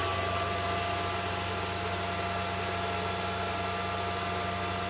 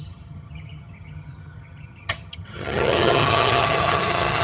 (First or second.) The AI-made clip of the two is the second